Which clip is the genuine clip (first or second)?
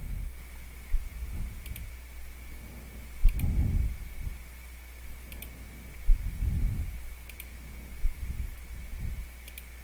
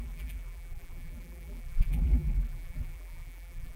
first